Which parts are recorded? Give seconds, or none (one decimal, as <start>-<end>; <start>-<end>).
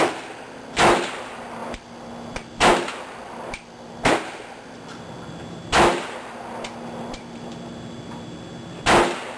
none